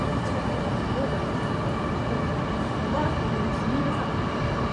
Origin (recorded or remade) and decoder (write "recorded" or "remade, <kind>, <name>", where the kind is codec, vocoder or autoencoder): recorded